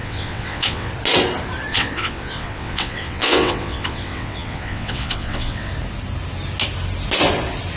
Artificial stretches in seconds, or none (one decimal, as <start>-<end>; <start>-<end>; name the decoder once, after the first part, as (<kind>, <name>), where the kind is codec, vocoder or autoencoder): 0.0-0.9 (vocoder, WaveNeXt); 1.7-5.7